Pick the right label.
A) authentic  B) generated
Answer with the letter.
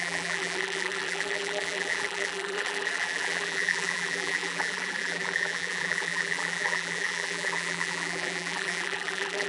B